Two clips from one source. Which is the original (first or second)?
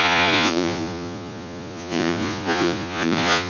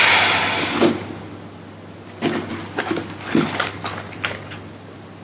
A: second